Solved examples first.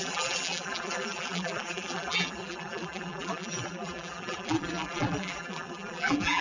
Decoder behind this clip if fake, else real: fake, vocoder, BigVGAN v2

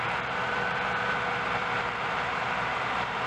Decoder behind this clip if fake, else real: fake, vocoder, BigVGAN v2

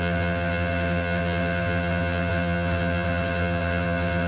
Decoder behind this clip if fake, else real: fake, vocoder, BigVGAN v2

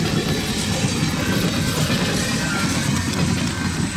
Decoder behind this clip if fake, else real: real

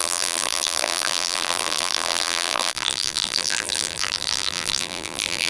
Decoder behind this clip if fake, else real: fake, vocoder, BigVGAN v2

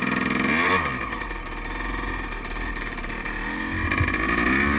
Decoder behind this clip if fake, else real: real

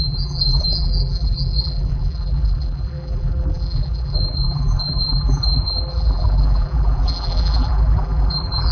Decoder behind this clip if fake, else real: fake, vocoder, BigVGAN v2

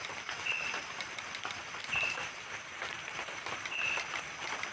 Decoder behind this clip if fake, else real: fake, vocoder, BigVGAN v2